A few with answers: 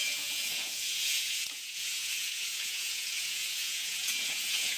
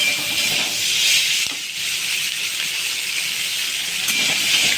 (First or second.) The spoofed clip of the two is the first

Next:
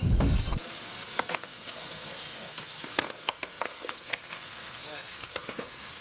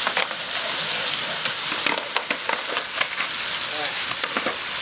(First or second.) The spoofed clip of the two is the first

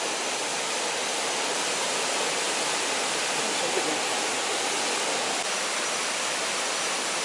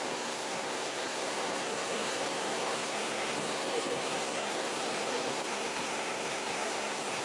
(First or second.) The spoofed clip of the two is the second